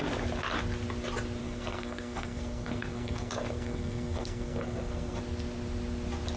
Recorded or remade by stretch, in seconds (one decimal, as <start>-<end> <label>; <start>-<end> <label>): 0.0-1.4 recorded; 1.4-5.2 remade; 5.2-6.4 recorded